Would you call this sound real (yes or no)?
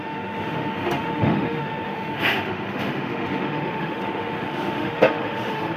no